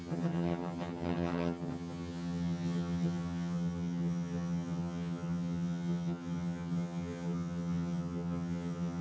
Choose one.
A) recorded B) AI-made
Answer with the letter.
B